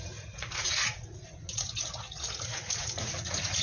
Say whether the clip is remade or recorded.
remade